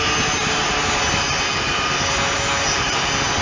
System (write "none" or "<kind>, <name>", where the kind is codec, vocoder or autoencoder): none